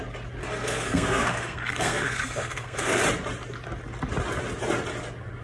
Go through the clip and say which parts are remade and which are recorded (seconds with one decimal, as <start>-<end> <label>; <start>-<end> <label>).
0.0-0.4 recorded; 0.4-3.0 remade; 3.0-5.4 recorded